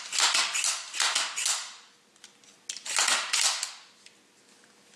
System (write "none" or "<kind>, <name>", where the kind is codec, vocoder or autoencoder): none